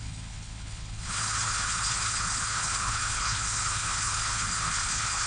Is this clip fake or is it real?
fake